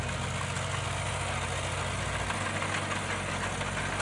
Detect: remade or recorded recorded